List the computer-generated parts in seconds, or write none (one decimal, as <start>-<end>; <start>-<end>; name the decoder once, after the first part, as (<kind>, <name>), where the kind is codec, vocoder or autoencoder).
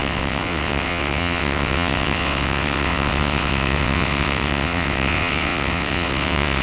0.0-6.6 (vocoder, WaveNeXt)